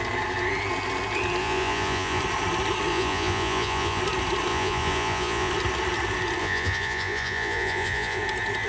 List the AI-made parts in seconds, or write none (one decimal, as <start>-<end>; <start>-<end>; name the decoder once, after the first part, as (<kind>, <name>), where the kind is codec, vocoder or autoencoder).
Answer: 1.4-2.2 (vocoder, Vocos); 2.9-4.0; 4.5-5.5; 6.4-8.2

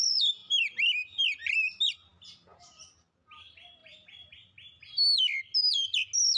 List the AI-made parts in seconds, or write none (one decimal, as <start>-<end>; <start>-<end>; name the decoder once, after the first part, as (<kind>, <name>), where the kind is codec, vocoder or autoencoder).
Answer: none

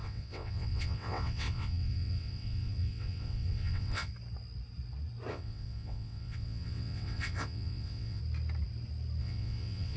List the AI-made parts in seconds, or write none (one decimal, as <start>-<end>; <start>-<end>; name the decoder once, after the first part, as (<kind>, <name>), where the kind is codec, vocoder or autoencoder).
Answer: 0.0-4.1 (vocoder, WaveNeXt); 5.3-8.2; 9.2-10.0

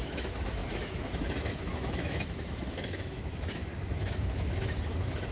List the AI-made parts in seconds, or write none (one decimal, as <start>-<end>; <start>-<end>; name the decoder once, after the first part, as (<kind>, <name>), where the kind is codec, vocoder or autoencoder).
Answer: 0.0-5.3 (autoencoder, DAC-VAE)